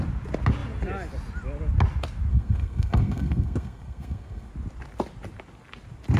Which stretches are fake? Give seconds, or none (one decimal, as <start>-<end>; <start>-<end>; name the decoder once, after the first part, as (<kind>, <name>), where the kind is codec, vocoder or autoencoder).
2.3-4.5 (codec, SNAC)